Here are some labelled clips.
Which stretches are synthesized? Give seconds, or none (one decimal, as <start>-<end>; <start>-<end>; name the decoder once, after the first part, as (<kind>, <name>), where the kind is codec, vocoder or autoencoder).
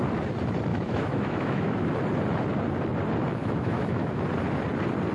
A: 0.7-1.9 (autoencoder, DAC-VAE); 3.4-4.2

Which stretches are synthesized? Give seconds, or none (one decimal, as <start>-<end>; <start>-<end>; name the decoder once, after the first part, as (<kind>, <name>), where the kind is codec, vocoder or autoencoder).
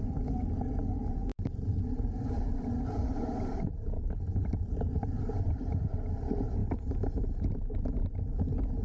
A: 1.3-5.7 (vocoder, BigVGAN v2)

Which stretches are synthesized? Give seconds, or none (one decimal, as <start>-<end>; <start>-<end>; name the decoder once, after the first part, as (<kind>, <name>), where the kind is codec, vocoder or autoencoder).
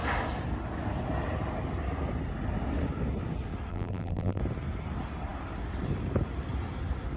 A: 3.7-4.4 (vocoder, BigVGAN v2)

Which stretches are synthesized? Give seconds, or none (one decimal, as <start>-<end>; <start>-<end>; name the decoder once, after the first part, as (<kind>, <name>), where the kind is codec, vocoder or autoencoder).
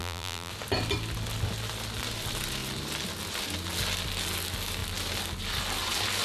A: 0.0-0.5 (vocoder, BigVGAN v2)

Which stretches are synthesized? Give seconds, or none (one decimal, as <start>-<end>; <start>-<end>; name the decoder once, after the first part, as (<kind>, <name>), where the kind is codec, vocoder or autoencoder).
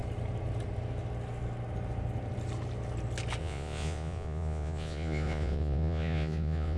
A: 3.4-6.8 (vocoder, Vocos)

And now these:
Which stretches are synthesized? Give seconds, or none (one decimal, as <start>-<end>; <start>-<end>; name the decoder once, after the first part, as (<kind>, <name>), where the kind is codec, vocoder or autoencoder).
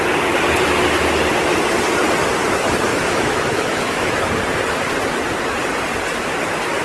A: 2.9-4.2 (autoencoder, DAC-VAE)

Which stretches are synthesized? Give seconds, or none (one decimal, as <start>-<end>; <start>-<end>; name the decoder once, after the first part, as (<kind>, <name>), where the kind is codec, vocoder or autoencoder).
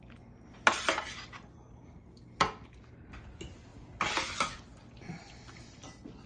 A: none